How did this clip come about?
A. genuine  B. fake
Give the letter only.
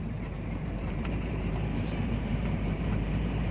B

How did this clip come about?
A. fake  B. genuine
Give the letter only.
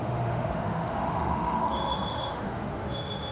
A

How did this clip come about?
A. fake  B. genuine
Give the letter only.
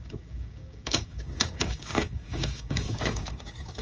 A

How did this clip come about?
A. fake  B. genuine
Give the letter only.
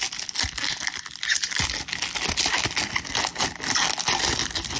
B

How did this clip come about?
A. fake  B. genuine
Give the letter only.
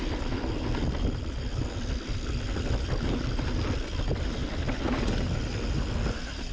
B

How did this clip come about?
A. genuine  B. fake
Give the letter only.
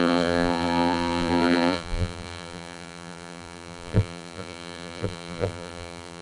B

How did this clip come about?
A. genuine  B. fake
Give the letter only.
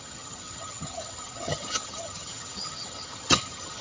B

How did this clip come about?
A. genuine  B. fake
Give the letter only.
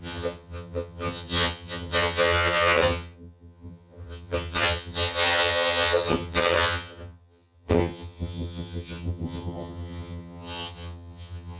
B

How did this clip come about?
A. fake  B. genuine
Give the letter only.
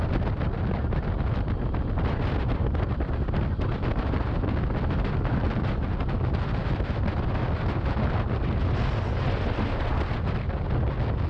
B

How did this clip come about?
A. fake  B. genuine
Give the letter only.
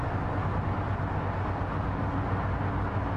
B